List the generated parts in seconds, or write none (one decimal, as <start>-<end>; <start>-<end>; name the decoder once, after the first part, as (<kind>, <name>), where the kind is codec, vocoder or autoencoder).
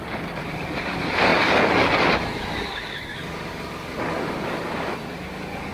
0.0-5.7 (codec, DAC)